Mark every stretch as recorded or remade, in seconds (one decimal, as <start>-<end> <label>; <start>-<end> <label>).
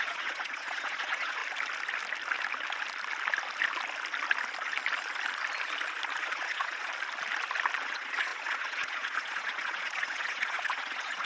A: 0.0-1.4 remade; 1.4-6.2 recorded; 6.2-6.9 remade; 6.9-7.8 recorded; 7.8-11.3 remade